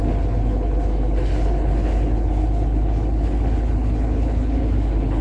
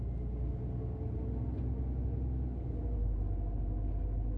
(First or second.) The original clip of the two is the second